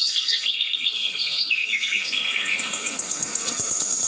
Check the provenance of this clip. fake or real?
fake